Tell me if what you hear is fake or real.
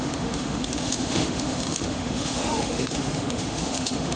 fake